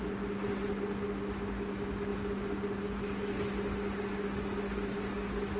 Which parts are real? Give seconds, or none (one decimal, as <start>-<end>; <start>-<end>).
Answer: 0.0-5.6